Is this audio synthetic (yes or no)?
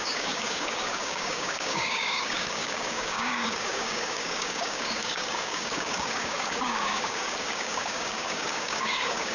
yes